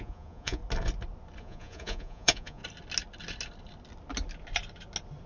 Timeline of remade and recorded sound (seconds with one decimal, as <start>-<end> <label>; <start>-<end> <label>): 0.0-0.6 remade; 0.6-1.4 recorded; 1.4-2.6 remade; 2.6-5.3 recorded